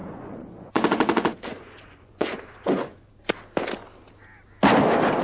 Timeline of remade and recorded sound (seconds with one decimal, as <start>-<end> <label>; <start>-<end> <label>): 0.0-3.1 remade; 3.1-5.2 recorded